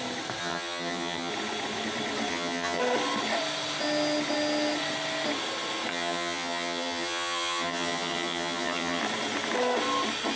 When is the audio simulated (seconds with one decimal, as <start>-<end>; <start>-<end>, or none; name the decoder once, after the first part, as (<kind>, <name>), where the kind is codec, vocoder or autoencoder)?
0.4-1.3 (vocoder, HiFi-GAN); 2.3-2.8; 5.9-9.0